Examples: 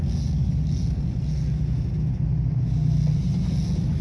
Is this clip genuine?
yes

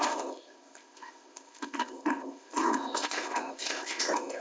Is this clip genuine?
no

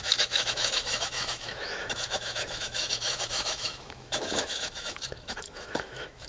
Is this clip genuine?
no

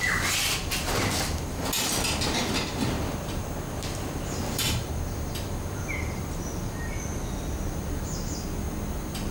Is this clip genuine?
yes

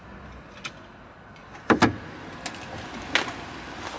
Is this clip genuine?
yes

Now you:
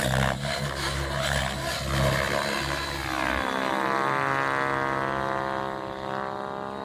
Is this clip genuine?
yes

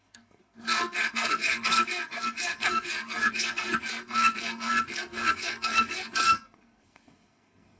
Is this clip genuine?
no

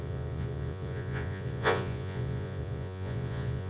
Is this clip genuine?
no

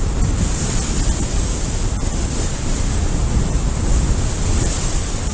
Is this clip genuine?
yes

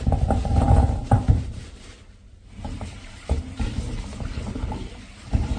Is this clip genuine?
no